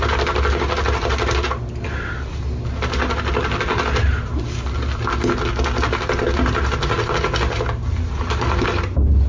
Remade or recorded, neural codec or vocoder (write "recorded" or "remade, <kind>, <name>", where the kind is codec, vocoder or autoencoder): recorded